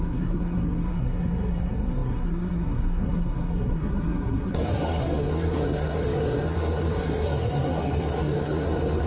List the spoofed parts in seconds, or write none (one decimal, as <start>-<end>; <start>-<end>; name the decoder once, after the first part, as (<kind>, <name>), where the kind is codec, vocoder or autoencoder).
0.0-9.1 (codec, SNAC)